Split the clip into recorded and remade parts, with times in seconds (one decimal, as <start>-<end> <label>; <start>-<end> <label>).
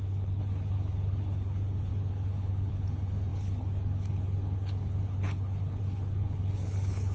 0.0-7.1 remade